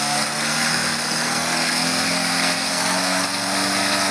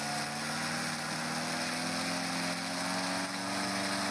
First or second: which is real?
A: second